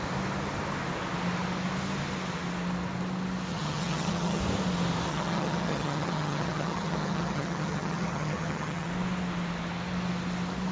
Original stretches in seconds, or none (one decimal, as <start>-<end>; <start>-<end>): 0.0-3.5; 4.4-5.1; 8.9-10.7